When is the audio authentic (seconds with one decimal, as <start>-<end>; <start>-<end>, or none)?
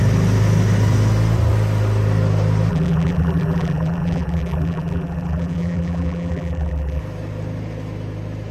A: 0.0-2.7; 7.0-8.5